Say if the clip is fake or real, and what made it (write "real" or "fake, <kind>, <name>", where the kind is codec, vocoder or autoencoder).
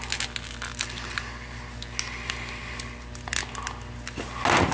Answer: real